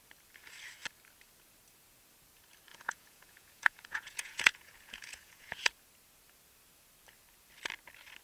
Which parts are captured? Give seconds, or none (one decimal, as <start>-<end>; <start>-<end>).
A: 0.0-2.7; 5.7-8.2